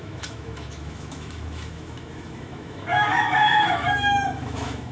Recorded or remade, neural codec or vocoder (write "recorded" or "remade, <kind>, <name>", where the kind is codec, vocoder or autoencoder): remade, autoencoder, DAC-VAE